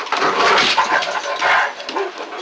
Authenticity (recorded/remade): recorded